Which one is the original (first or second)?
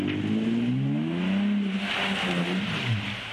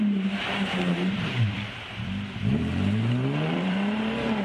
first